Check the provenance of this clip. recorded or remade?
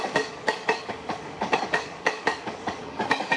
remade